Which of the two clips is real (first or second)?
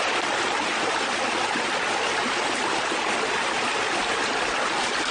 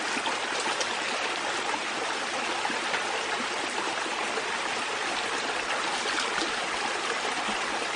second